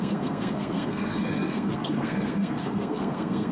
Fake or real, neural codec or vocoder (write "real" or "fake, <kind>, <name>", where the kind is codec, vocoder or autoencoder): fake, codec, SNAC